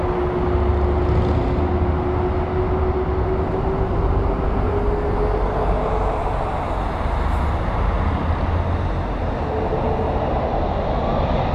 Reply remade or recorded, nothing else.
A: recorded